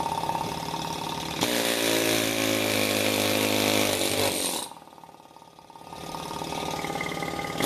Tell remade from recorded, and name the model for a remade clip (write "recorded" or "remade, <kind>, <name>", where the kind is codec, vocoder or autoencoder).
recorded